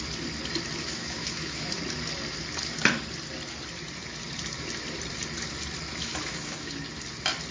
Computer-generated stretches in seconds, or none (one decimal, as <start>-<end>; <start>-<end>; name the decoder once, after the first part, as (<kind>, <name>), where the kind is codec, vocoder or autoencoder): 0.8-1.7 (autoencoder, DAC-VAE); 6.0-6.7